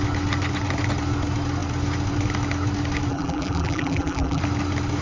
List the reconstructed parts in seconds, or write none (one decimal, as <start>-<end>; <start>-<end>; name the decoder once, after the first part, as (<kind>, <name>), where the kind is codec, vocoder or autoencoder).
3.1-4.4 (vocoder, BigVGAN v2)